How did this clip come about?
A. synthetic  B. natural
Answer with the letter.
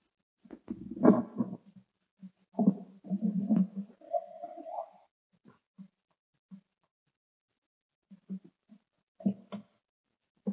B